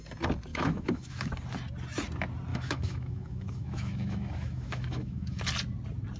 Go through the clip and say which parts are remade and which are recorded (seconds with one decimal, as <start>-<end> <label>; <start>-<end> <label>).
0.0-0.5 recorded; 0.5-1.3 remade; 1.3-2.5 recorded; 2.5-5.4 remade; 5.4-6.2 recorded